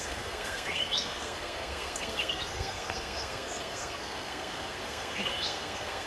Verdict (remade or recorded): remade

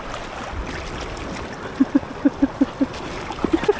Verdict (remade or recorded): recorded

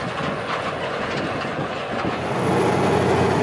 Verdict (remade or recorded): remade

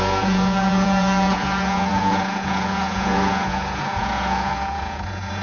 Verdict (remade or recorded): remade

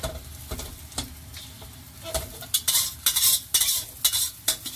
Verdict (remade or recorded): recorded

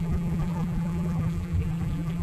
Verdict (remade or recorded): remade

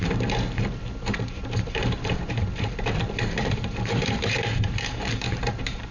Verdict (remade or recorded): remade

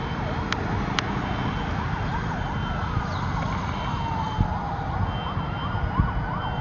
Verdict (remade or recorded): recorded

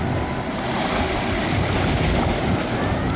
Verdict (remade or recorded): recorded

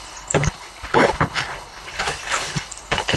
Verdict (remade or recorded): remade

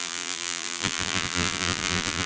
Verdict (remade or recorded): remade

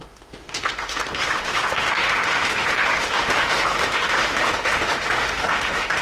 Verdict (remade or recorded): remade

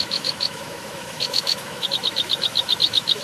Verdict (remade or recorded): remade